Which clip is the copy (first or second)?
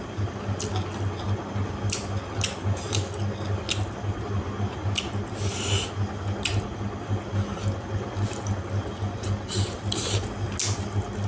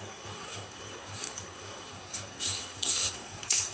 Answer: second